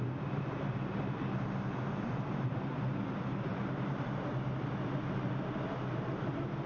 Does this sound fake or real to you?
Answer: real